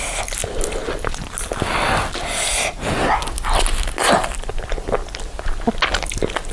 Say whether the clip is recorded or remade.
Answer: recorded